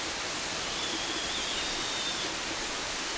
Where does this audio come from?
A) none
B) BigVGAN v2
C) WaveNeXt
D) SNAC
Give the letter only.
A